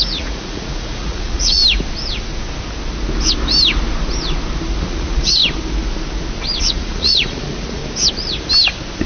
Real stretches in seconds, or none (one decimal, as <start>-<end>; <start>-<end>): 1.6-4.8; 5.4-6.6; 7.8-9.1